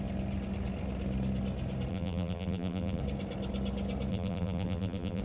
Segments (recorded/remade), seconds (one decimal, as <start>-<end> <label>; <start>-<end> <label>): 0.0-1.9 recorded; 1.9-3.0 remade; 3.0-4.1 recorded; 4.1-5.2 remade